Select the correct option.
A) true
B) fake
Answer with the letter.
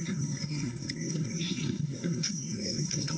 B